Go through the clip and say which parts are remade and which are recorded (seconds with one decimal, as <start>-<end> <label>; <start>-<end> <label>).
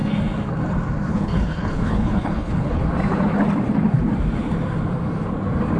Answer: 0.0-1.1 recorded; 1.1-2.8 remade; 2.8-5.8 recorded